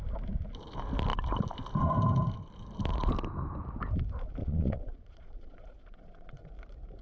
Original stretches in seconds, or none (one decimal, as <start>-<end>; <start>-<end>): 0.0-4.4; 6.5-7.0